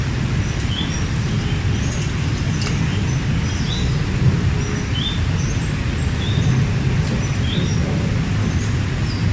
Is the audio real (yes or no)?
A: yes